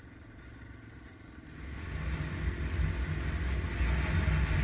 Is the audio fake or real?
real